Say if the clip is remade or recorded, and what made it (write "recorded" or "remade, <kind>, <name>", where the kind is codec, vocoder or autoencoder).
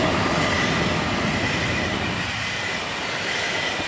recorded